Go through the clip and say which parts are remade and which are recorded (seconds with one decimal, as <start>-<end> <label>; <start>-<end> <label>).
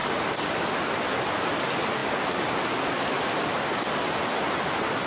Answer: 0.0-5.1 recorded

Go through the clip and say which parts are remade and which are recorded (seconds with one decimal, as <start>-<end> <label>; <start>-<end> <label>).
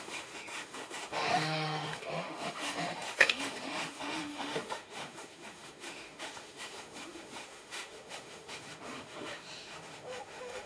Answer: 0.0-10.7 remade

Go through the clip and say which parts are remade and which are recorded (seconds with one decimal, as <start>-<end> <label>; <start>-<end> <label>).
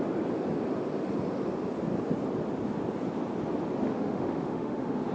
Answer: 0.0-3.9 recorded; 3.9-5.1 remade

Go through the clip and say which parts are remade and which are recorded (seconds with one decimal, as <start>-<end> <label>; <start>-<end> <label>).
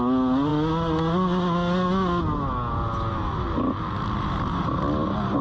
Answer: 0.0-5.4 recorded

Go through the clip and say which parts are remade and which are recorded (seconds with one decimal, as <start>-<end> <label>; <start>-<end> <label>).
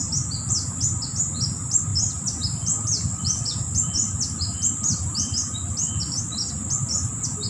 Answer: 0.0-7.5 recorded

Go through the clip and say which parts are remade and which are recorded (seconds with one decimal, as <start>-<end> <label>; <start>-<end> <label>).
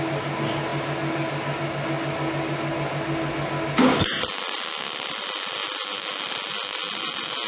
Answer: 0.0-7.5 recorded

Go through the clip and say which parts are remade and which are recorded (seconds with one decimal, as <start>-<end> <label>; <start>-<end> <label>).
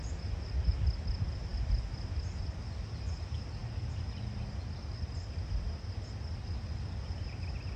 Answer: 0.0-7.8 recorded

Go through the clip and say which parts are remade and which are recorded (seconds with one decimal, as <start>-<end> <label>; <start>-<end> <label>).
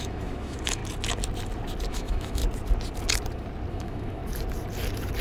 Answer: 0.0-0.8 remade; 0.8-1.9 recorded; 1.9-2.4 remade; 2.4-3.7 recorded; 3.7-4.2 remade; 4.2-5.2 recorded